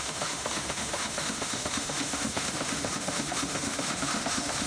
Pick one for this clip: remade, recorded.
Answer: remade